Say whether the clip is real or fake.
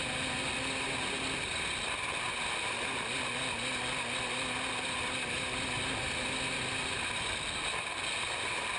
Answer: real